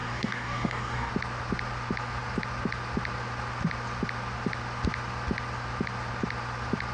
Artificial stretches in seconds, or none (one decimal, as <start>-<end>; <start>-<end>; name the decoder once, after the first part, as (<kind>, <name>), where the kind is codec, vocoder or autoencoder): 0.0-1.1 (codec, DAC)